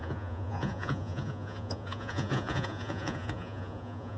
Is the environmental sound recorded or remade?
remade